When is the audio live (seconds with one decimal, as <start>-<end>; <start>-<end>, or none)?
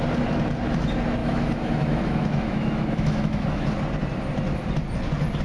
0.0-1.2; 3.7-5.4